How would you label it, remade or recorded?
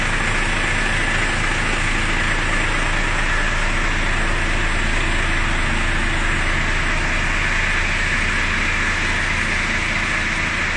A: recorded